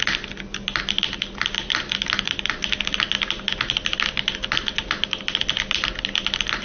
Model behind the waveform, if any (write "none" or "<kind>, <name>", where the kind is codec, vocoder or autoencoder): none